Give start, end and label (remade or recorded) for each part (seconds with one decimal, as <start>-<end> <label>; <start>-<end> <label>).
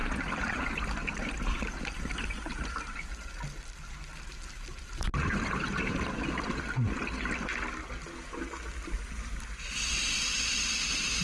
0.0-2.8 remade; 2.8-11.2 recorded